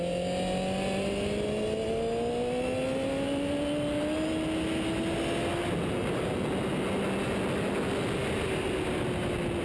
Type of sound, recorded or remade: recorded